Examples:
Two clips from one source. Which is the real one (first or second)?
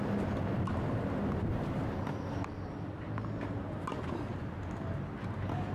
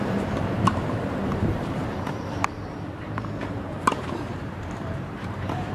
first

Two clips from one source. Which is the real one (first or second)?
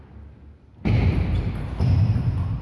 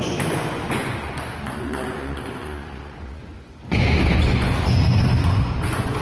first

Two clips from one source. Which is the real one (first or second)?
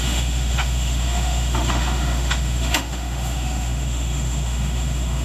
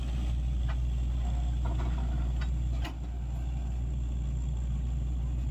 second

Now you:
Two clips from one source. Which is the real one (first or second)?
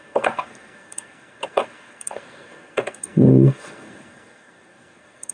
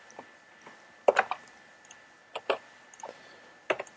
second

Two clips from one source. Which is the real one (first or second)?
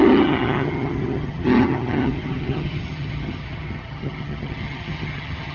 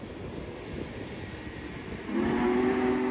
second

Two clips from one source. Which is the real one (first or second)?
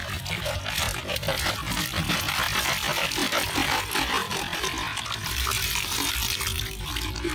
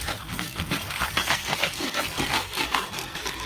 first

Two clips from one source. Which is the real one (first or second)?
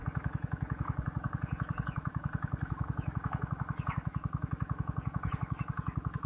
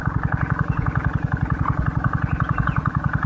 second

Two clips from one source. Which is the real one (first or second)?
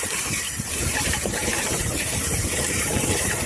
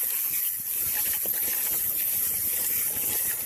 second